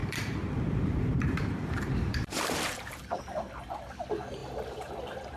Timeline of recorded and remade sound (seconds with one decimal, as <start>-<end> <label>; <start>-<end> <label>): 0.0-3.2 remade; 3.2-4.4 recorded; 4.4-4.9 remade; 4.9-5.4 recorded